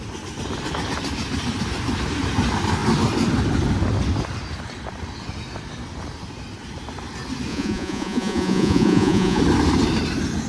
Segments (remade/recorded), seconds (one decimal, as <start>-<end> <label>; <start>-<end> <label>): 0.0-7.5 recorded; 7.5-9.4 remade; 9.4-10.5 recorded